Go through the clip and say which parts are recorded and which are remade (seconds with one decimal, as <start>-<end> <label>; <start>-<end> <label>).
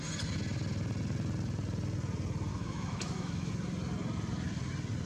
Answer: 0.0-2.5 recorded; 2.5-3.5 remade; 3.5-5.1 recorded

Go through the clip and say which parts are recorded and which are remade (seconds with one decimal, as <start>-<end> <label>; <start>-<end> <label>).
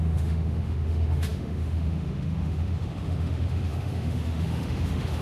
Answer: 0.0-5.2 remade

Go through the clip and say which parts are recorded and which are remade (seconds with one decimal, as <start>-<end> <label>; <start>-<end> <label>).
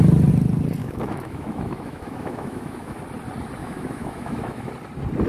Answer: 0.0-0.8 recorded; 0.8-3.0 remade; 3.0-3.6 recorded; 3.6-4.7 remade; 4.7-5.3 recorded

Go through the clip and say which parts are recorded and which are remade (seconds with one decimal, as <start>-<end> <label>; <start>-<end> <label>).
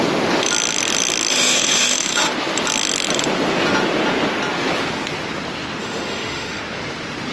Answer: 0.0-1.3 recorded; 1.3-2.3 remade; 2.3-5.8 recorded; 5.8-6.6 remade; 6.6-7.3 recorded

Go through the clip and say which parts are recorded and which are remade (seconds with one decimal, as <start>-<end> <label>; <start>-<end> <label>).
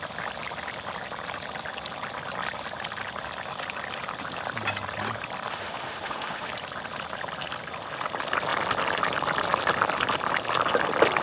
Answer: 0.0-5.5 recorded; 5.5-6.5 remade; 6.5-11.2 recorded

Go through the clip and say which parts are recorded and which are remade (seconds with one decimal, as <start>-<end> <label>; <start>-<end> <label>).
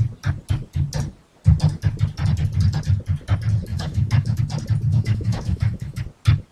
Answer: 0.0-3.7 recorded; 3.7-4.4 remade; 4.4-4.9 recorded; 4.9-6.0 remade; 6.0-6.5 recorded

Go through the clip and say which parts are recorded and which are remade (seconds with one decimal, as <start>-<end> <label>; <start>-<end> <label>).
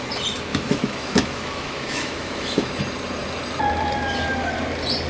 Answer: 0.0-0.5 recorded; 0.5-2.8 remade; 2.8-5.1 recorded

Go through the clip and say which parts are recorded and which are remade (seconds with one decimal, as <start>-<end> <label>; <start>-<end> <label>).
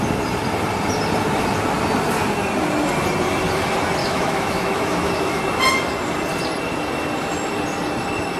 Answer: 0.0-4.0 recorded; 4.0-5.4 remade; 5.4-8.4 recorded